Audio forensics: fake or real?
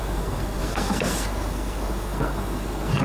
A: fake